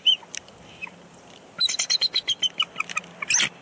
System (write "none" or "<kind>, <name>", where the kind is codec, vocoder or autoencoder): none